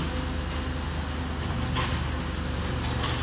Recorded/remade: recorded